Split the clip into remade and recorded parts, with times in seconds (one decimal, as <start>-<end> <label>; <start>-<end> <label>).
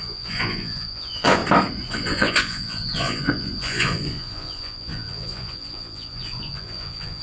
0.0-1.4 remade; 1.4-1.9 recorded; 1.9-7.2 remade